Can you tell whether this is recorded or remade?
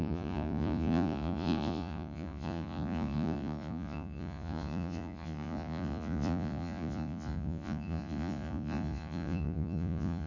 remade